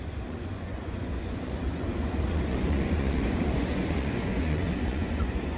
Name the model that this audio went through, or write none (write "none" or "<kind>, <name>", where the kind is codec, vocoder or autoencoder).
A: vocoder, Vocos